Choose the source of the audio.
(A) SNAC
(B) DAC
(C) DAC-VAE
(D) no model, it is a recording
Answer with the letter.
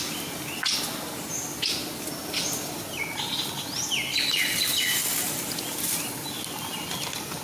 D